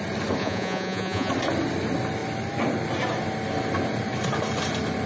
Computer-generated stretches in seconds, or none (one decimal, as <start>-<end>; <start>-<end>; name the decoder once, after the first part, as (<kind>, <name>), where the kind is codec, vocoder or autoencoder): 0.4-1.3 (vocoder, Vocos)